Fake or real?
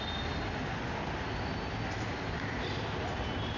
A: real